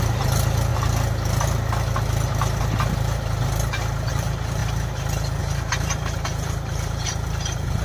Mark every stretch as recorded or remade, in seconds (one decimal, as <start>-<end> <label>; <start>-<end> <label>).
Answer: 0.0-0.7 remade; 0.7-4.1 recorded; 4.1-4.6 remade; 4.6-5.4 recorded; 5.4-7.8 remade